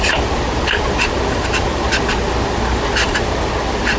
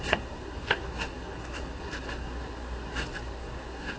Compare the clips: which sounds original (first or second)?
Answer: first